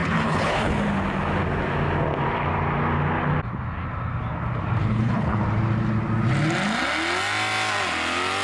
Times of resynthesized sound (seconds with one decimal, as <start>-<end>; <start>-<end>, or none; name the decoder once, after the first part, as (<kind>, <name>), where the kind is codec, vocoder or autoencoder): 0.0-0.7 (codec, HILCodec); 4.8-5.4